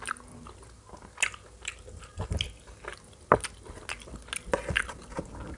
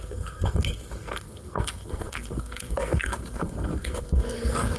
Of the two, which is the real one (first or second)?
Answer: first